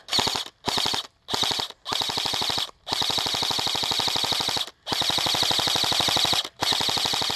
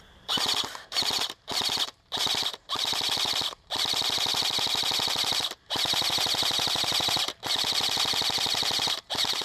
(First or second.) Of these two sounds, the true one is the first